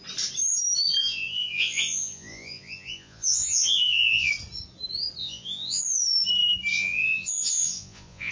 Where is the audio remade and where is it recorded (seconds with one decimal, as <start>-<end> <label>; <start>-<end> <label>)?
0.0-1.0 recorded; 1.0-4.3 remade; 4.3-5.2 recorded; 5.2-5.8 remade; 5.8-6.7 recorded; 6.7-8.3 remade